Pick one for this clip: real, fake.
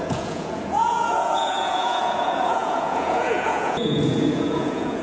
fake